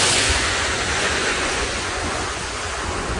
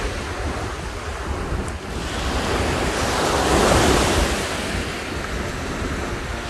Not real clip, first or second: first